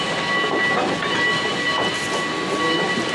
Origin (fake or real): real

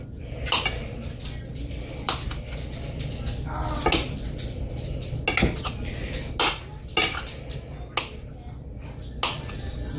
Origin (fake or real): real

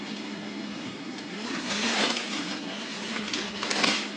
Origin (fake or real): fake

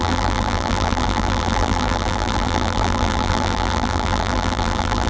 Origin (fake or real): fake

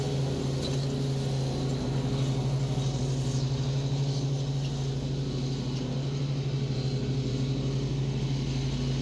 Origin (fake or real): real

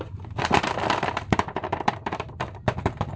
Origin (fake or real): fake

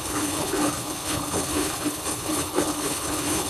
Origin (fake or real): fake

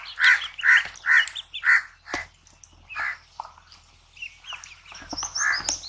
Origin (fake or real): real